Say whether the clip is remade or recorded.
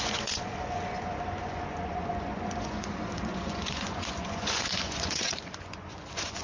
remade